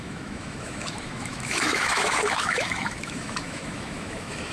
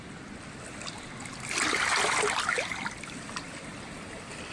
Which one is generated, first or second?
first